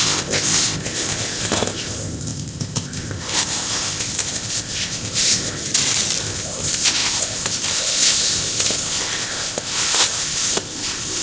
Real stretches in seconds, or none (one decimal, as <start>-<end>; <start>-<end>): 5.6-6.2